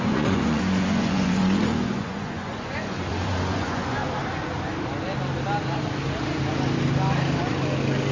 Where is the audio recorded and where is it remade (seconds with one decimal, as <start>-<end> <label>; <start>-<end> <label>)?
0.0-4.0 remade; 4.0-8.1 recorded